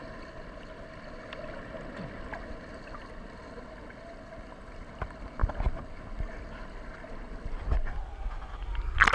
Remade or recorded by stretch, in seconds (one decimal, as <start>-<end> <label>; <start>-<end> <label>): 0.0-9.1 recorded